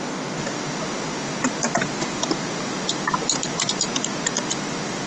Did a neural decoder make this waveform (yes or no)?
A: no